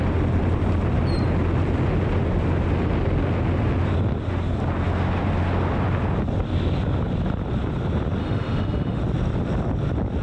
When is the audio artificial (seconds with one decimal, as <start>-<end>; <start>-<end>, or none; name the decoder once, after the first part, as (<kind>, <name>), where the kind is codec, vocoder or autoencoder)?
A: 8.2-9.0 (autoencoder, DAC-VAE)